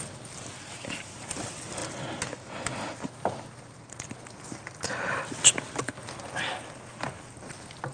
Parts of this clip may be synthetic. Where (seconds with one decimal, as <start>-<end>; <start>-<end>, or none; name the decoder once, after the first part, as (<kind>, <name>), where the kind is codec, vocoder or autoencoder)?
none